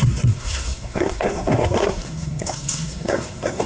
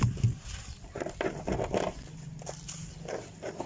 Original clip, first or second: second